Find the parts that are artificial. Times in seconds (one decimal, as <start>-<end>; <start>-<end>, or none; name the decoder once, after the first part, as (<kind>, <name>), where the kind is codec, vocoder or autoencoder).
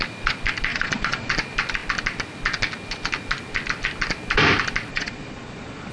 0.7-1.3 (vocoder, Vocos); 4.9-5.9